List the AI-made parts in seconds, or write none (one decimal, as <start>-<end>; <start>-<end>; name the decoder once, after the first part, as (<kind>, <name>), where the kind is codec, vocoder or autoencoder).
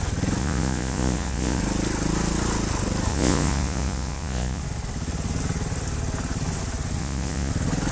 0.4-1.6 (vocoder, Vocos); 3.1-4.6; 7.0-7.5